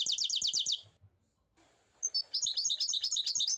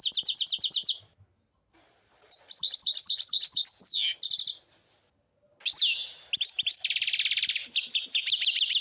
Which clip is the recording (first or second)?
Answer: second